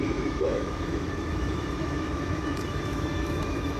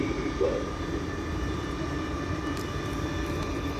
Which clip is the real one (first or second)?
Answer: second